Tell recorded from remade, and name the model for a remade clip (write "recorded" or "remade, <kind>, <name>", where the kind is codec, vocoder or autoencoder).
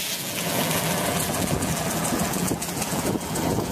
remade, vocoder, BigVGAN v2